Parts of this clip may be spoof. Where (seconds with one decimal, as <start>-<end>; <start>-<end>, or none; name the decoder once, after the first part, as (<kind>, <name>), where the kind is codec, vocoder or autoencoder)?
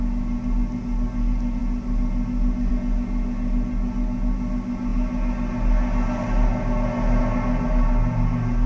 none